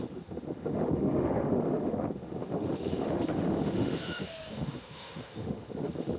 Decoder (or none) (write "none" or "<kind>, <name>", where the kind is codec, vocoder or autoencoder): autoencoder, DAC-VAE